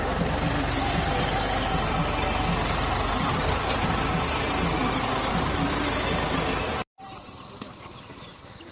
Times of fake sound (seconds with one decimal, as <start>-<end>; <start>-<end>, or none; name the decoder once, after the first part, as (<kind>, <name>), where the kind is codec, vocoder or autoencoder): none